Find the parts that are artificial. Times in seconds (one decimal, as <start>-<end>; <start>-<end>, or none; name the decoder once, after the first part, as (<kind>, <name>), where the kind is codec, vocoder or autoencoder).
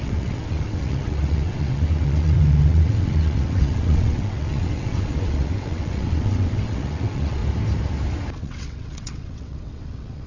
0.0-7.4 (vocoder, WaveNeXt); 8.4-10.3